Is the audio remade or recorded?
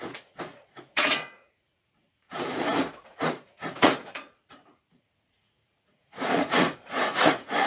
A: remade